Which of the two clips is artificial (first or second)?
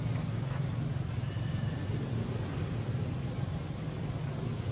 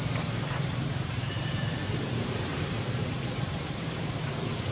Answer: second